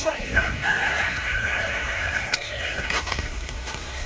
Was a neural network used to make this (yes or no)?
yes